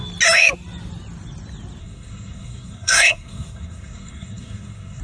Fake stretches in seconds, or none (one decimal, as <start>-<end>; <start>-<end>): 1.8-5.0